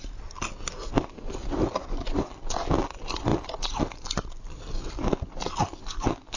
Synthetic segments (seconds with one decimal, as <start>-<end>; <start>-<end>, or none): 1.8-2.3

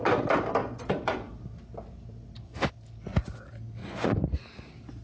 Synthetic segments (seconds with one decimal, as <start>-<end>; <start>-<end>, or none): 0.6-1.3; 3.8-4.4

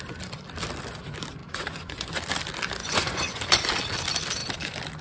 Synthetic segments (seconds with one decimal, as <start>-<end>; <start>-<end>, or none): 1.4-2.2; 2.8-3.4

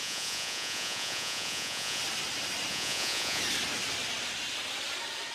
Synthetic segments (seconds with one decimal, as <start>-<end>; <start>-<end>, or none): 0.0-2.0; 2.7-3.4

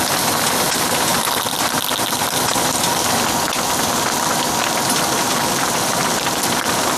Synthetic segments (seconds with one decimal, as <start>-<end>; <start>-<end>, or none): none

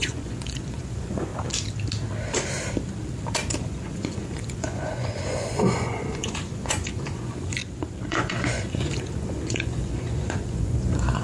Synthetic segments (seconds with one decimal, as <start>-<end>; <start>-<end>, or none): 0.0-1.3; 3.6-7.6; 8.1-11.2

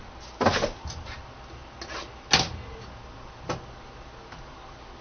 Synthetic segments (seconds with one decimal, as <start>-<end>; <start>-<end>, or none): none